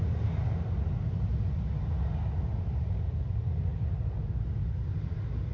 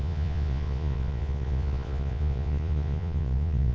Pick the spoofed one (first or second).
second